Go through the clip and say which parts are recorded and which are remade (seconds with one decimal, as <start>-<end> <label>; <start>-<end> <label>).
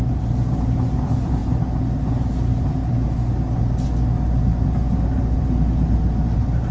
0.0-6.7 recorded